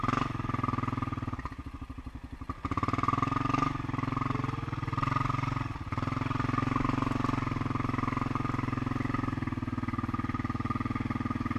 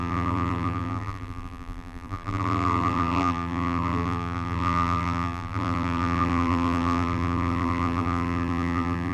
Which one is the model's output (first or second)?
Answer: second